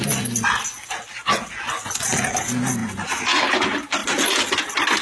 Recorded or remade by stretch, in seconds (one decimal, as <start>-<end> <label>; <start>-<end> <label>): 0.0-5.0 recorded